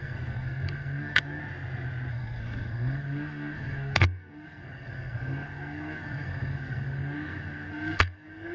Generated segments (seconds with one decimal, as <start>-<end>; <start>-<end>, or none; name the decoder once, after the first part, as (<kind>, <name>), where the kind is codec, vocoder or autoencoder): 0.0-1.4 (codec, SNAC); 2.1-8.5